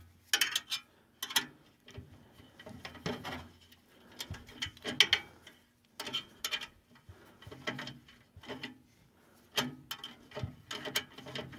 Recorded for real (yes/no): yes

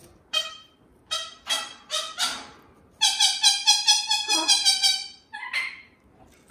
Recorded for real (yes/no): yes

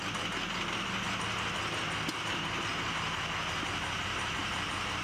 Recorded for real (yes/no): yes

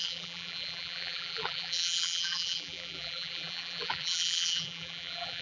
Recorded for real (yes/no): no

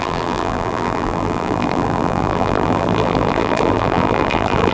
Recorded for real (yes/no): no